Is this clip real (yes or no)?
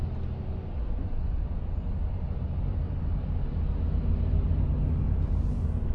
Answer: yes